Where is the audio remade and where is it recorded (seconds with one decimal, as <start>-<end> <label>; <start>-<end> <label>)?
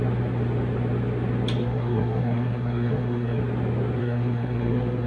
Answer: 0.0-1.6 recorded; 1.6-3.4 remade; 3.4-4.0 recorded; 4.0-5.1 remade